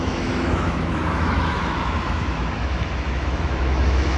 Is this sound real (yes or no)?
no